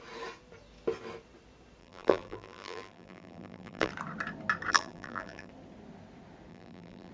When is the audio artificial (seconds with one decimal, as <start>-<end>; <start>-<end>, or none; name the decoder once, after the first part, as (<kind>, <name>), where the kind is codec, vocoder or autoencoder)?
1.8-3.9 (vocoder, BigVGAN v2); 4.7-5.5; 6.5-7.1